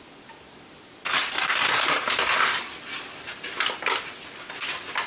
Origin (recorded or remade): recorded